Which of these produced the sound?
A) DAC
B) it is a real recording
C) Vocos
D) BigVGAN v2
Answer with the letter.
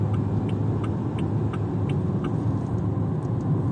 B